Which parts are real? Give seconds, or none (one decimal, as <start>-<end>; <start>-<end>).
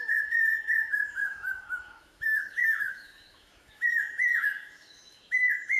none